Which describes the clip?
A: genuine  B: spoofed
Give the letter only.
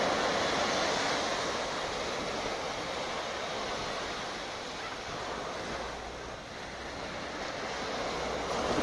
A